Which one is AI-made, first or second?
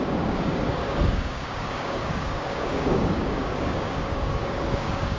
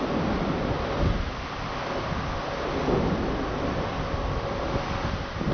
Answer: first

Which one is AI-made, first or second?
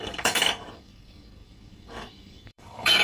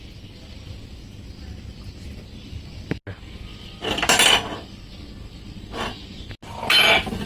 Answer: first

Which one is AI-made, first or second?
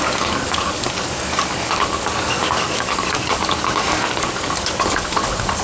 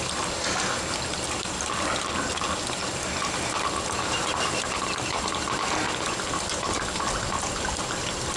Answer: first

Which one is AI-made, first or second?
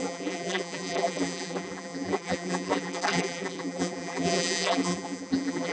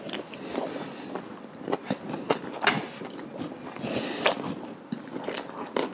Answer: first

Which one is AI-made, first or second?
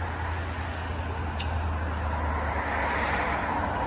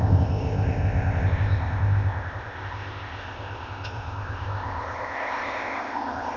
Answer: second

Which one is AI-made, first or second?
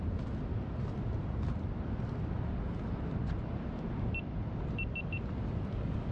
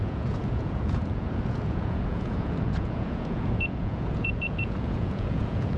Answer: second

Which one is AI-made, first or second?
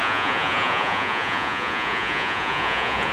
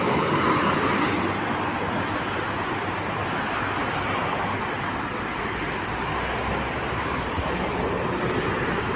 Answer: first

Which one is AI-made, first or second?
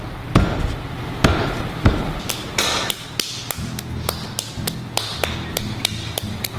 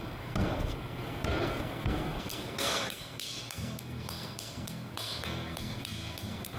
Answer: second